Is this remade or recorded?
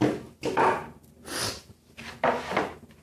recorded